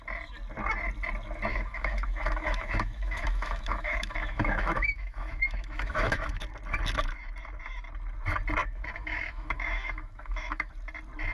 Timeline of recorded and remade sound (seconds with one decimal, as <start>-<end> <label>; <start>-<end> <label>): 0.0-1.5 recorded; 1.5-6.4 remade; 6.4-8.6 recorded; 8.6-10.7 remade; 10.7-11.3 recorded